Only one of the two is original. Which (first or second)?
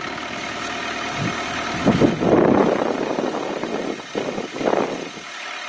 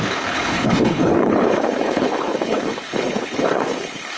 first